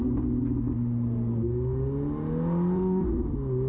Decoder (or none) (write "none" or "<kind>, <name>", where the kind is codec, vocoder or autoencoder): none